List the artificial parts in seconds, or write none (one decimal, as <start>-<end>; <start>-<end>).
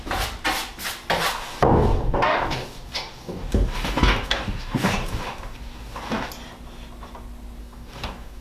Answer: 1.3-6.3; 7.6-8.4